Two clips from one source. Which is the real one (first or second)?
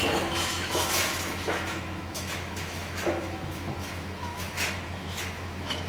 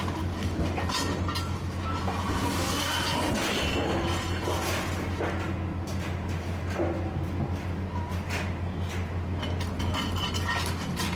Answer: second